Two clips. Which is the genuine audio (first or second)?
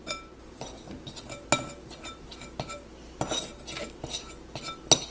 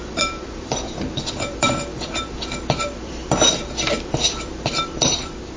first